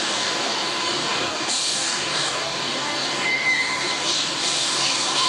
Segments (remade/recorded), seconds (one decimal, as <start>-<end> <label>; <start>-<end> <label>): 0.0-5.3 remade